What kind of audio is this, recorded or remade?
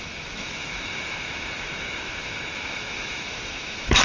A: remade